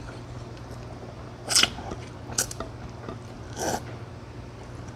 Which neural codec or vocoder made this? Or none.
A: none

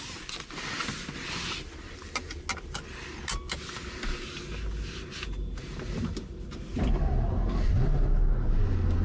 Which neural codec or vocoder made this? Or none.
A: none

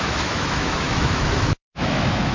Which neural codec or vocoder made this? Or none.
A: autoencoder, DAC-VAE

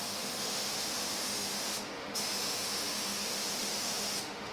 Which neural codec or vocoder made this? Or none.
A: autoencoder, DAC-VAE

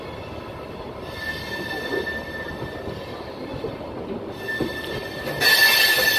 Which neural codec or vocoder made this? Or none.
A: none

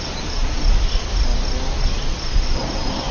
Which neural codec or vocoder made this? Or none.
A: none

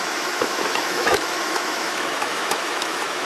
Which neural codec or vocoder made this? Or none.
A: autoencoder, DAC-VAE